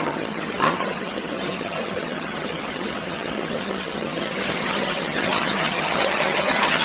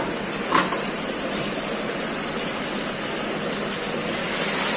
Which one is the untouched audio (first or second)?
second